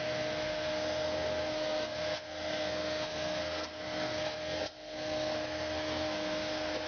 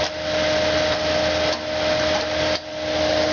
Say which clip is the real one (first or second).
second